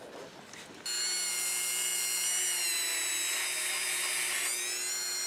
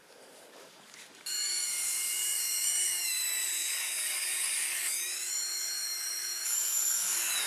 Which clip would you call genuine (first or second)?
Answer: first